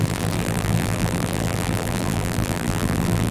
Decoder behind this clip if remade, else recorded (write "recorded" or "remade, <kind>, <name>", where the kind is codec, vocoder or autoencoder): remade, vocoder, BigVGAN v2